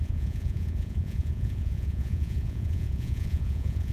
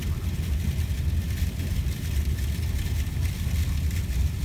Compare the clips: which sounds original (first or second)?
second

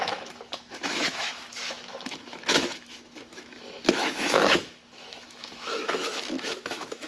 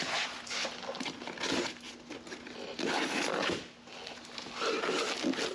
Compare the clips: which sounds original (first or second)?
second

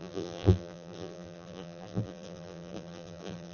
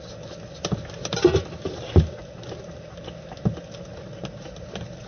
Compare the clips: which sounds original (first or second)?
second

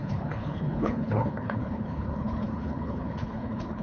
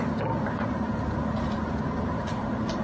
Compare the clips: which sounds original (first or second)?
second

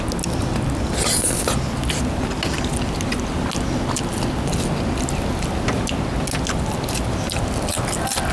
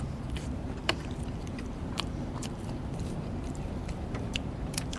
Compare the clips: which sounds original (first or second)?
first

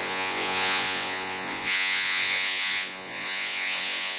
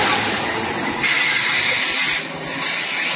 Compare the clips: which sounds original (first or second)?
second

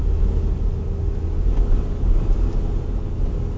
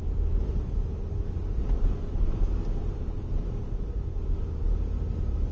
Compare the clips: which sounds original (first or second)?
first